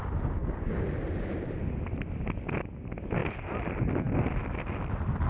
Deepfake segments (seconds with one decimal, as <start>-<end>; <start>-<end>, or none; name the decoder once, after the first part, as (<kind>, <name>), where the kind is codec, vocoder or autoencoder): 3.2-4.2 (vocoder, BigVGAN v2)